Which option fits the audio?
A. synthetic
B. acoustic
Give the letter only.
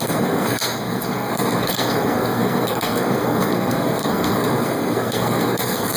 A